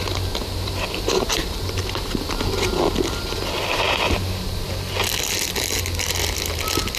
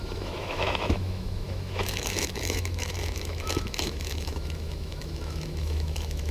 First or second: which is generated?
second